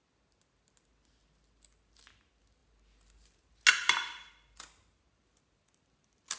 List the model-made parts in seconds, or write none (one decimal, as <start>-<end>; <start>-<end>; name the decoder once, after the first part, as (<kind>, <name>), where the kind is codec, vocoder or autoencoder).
none